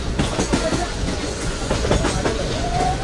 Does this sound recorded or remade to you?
remade